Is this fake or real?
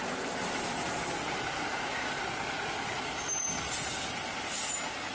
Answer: real